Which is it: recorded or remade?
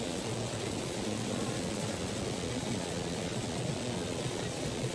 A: remade